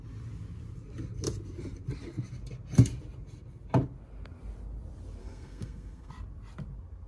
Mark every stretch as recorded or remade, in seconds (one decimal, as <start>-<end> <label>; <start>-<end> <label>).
0.0-5.2 recorded; 5.2-6.1 remade; 6.1-7.1 recorded